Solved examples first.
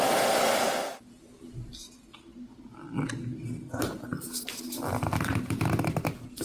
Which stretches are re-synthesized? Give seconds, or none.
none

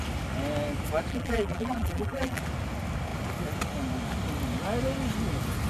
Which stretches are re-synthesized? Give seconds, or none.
1.1-2.4 (vocoder, BigVGAN v2)

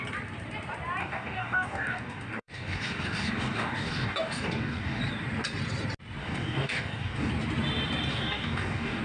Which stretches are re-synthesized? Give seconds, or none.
1.0-5.0 (codec, DAC); 6.2-7.3; 8.1-9.0

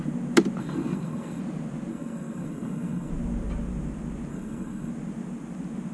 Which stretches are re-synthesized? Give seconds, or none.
0.6-1.4 (codec, SNAC); 1.9-3.1; 4.3-4.9